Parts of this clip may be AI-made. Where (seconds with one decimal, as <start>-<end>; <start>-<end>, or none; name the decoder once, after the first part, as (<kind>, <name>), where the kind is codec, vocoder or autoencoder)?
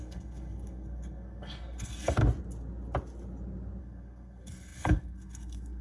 0.0-2.2 (codec, SNAC); 3.8-5.8